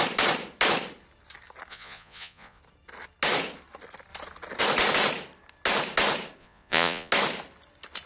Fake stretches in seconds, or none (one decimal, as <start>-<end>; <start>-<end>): 1.7-2.6; 6.4-7.1